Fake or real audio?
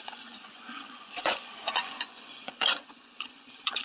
fake